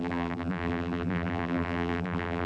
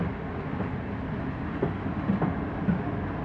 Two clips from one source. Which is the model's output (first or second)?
first